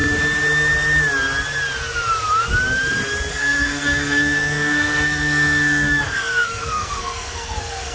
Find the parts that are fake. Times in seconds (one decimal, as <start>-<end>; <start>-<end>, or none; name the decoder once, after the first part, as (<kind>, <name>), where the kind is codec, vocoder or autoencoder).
3.3-7.9 (codec, SNAC)